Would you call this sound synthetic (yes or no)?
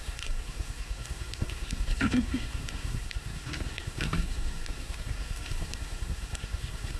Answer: yes